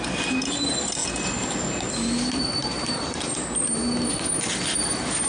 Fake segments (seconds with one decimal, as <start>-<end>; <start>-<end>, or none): 2.6-3.2